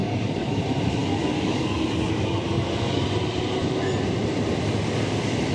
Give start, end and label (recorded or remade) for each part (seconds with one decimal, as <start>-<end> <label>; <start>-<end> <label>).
0.0-0.6 remade; 0.6-1.0 recorded; 1.0-3.0 remade; 3.0-5.5 recorded